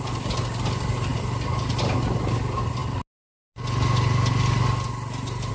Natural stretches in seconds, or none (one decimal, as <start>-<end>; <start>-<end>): 0.0-5.5